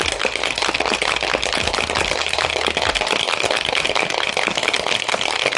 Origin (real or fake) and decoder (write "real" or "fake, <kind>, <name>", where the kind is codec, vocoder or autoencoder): real